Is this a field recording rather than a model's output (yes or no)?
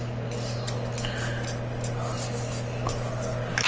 yes